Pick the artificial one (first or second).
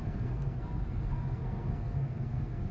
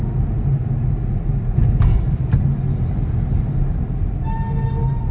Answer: first